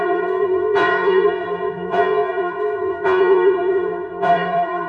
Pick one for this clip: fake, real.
fake